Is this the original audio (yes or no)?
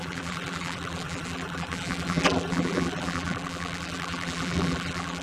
no